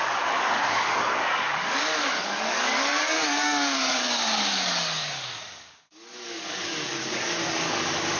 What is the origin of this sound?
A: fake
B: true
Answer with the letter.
A